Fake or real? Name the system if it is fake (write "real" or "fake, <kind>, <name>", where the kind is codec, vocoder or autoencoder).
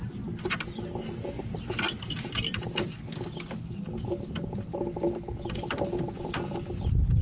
real